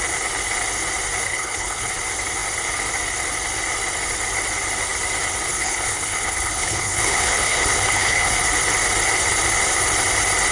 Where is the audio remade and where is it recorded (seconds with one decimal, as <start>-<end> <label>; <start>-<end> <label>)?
0.0-1.3 recorded; 1.3-1.9 remade; 1.9-5.5 recorded; 5.5-8.3 remade; 8.3-10.5 recorded